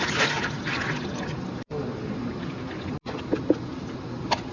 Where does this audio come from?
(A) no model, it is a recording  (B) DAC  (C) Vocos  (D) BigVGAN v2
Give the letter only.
A